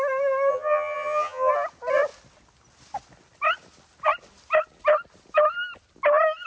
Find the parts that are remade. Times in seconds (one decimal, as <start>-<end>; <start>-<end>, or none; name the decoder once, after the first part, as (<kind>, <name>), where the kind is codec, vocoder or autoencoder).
0.5-1.5 (vocoder, HiFi-GAN)